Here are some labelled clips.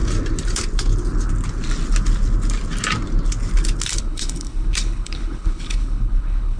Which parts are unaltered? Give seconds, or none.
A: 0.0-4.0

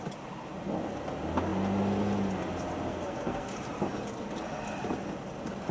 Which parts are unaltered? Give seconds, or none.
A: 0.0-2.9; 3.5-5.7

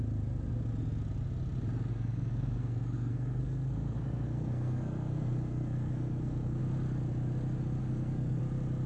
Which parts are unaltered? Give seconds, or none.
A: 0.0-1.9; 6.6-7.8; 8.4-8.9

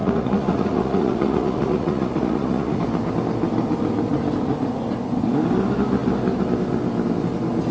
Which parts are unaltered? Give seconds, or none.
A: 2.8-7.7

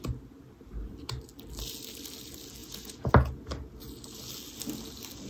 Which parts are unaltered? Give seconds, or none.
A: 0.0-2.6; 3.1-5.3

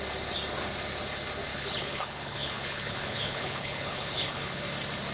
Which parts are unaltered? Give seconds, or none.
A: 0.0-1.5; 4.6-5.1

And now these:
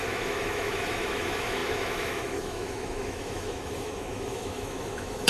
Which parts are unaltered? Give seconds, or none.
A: none